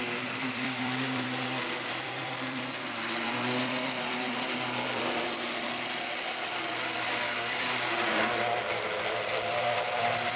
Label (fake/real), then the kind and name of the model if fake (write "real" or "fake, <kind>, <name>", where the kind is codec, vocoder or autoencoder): fake, vocoder, BigVGAN v2